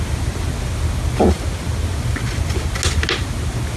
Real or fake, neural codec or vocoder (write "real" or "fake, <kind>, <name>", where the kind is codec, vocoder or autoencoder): real